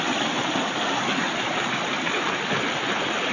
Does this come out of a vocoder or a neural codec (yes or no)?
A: no